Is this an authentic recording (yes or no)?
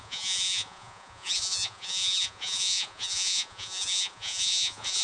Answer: no